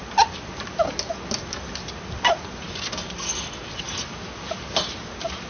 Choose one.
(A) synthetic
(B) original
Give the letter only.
B